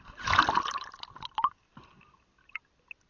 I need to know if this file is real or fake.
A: real